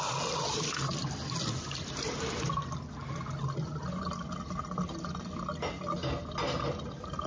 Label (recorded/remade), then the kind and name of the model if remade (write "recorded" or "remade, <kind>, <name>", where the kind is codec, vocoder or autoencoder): recorded